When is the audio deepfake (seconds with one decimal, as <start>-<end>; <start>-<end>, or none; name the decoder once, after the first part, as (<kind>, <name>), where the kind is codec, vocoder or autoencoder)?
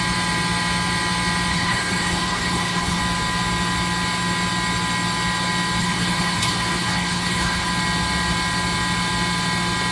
1.5-3.0 (codec, HILCodec); 5.8-7.7